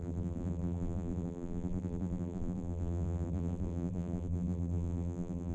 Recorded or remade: remade